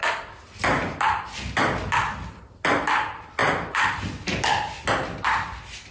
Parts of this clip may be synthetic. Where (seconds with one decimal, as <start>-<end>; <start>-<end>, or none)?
none